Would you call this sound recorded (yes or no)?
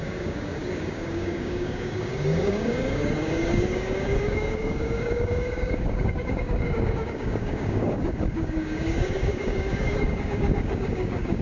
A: no